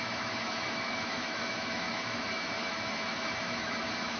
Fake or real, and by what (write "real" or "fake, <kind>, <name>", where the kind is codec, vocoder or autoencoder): fake, autoencoder, DAC-VAE